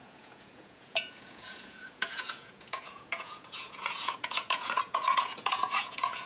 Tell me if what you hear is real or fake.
fake